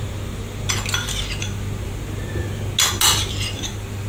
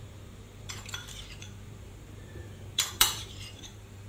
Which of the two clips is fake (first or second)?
second